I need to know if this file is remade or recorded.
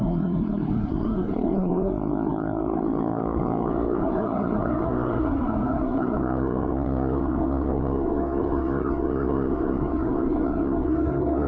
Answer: remade